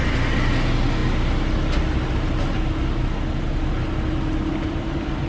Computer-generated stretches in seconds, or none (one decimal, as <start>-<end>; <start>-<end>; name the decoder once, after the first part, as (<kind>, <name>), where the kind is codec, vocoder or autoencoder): none